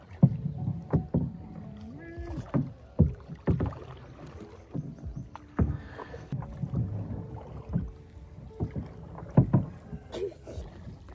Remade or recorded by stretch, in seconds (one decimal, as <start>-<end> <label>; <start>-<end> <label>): 0.0-5.5 recorded; 5.5-6.3 remade; 6.3-11.1 recorded